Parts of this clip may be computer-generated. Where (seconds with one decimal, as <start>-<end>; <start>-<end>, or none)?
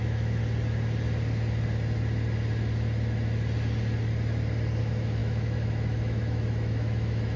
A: 0.0-0.4; 4.8-7.4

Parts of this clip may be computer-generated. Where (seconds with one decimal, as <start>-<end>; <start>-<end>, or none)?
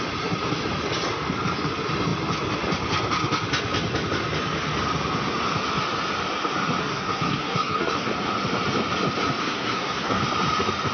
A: 6.8-8.1; 9.4-10.2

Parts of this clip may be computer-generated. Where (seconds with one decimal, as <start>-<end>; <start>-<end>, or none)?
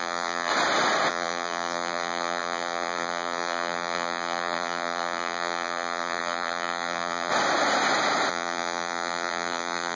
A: 0.0-0.5; 1.1-7.3; 8.3-10.0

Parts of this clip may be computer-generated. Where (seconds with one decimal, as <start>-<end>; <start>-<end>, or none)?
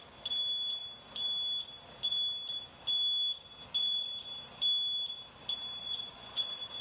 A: 5.8-6.8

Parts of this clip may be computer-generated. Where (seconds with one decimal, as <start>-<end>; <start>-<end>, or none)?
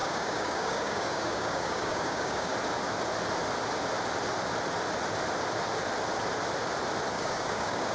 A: 0.0-2.5; 7.1-7.9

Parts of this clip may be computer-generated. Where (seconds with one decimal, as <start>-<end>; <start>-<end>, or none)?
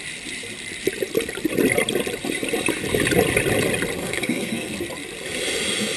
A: 4.0-4.7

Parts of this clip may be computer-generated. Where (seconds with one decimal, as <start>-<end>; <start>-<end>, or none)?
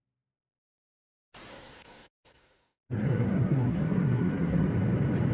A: 1.5-4.7